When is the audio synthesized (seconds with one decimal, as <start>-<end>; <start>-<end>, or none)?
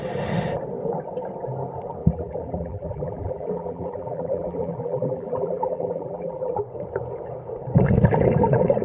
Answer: 2.0-6.6